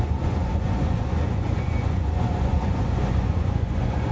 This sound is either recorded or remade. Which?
remade